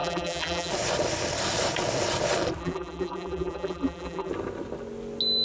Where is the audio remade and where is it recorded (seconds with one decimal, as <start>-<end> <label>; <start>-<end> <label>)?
0.0-0.7 remade; 0.7-2.6 recorded; 2.6-4.3 remade; 4.3-5.4 recorded